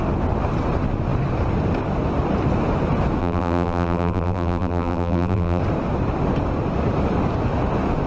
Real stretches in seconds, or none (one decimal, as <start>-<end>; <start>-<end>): 0.0-3.2; 5.6-8.1